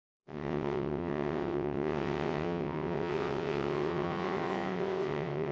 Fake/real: fake